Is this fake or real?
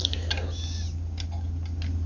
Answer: real